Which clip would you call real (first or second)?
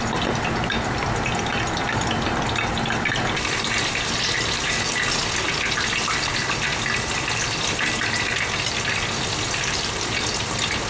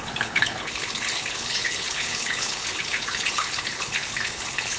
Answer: first